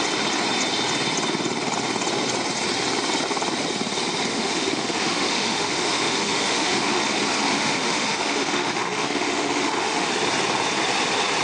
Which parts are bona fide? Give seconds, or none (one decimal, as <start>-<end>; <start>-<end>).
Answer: 0.0-4.3; 7.0-7.5; 10.1-11.4